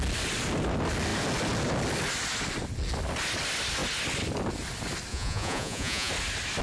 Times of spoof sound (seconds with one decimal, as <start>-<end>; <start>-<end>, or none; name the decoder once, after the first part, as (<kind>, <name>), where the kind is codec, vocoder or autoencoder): 5.1-6.1 (vocoder, Vocos)